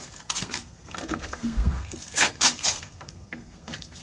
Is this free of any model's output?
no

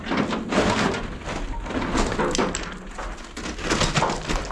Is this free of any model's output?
yes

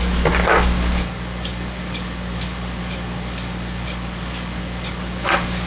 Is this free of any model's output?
no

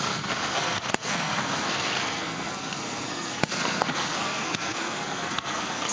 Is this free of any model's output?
no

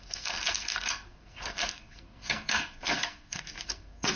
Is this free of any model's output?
no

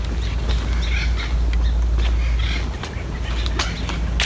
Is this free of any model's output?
yes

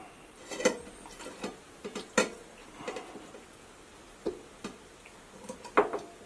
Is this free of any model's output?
yes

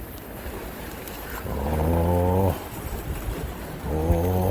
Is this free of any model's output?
yes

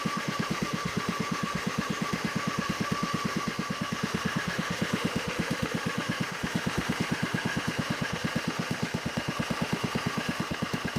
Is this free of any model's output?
no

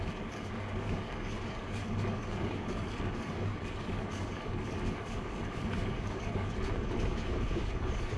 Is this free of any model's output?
no